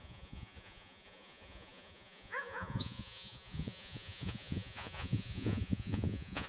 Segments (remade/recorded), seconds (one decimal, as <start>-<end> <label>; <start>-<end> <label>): 0.0-6.5 remade